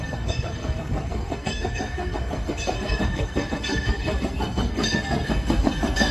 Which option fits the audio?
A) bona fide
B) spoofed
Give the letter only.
B